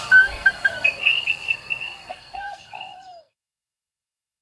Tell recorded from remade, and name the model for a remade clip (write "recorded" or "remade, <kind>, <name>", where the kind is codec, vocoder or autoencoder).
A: remade, codec, SNAC